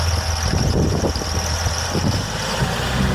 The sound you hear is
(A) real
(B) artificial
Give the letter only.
A